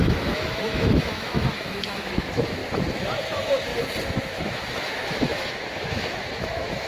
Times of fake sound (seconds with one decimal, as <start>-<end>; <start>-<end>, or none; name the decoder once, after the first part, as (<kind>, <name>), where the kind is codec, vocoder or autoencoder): 0.0-2.6 (autoencoder, DAC-VAE); 3.3-3.7; 4.3-6.9